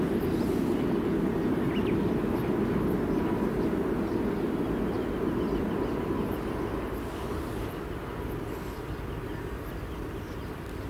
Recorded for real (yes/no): yes